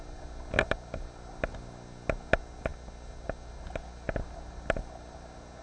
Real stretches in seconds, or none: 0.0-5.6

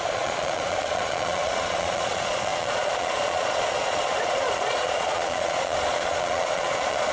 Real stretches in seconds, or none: none

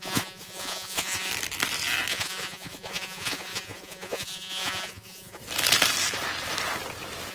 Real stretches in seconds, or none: 1.3-2.1; 5.4-7.3

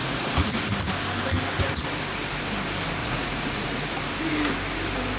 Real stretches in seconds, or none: 0.6-3.0; 3.8-5.2